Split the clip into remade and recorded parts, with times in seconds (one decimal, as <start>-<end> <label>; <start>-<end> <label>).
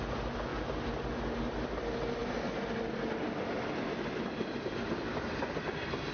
0.0-6.1 recorded